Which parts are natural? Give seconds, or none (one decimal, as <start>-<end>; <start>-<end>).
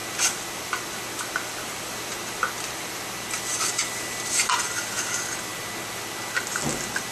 0.0-7.1